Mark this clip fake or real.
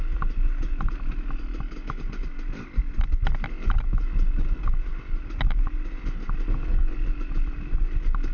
real